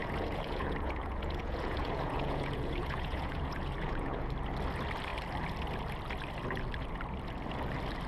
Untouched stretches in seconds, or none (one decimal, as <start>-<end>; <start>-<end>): 4.3-8.1

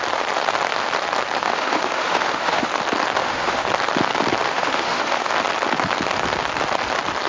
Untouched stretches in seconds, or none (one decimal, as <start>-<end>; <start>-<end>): 0.0-1.4; 2.7-3.2; 3.7-4.4; 5.3-7.3

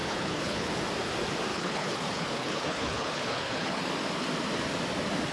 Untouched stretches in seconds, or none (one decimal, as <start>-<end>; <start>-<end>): 0.7-1.5; 3.8-5.3

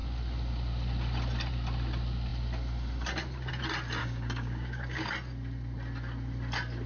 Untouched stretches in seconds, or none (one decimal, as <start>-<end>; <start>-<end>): 0.0-4.0; 5.1-6.9